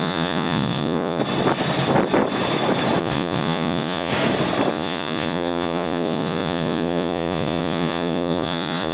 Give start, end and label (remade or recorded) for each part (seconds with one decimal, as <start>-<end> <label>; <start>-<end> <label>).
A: 0.0-1.2 remade; 1.2-3.0 recorded; 3.0-4.1 remade; 4.1-4.7 recorded; 4.7-8.9 remade